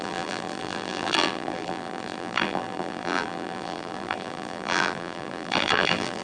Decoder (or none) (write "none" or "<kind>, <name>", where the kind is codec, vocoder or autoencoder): vocoder, BigVGAN v2